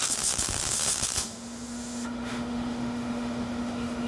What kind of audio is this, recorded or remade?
remade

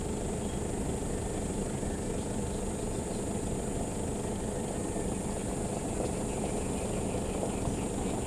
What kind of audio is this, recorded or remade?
recorded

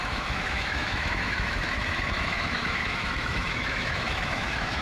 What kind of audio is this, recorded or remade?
remade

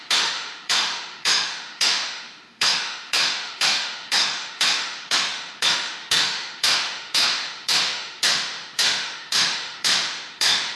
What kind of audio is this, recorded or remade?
remade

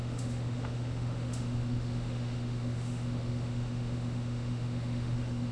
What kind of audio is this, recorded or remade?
remade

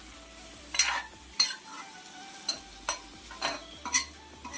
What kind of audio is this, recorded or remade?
recorded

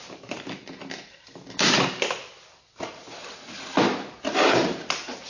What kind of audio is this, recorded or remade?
recorded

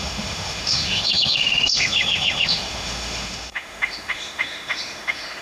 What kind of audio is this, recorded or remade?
remade